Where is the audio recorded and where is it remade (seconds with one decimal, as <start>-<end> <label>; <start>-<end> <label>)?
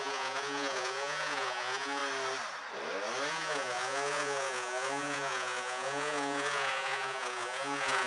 0.0-2.0 remade; 2.0-3.3 recorded; 3.3-8.1 remade